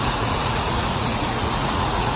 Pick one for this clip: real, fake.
fake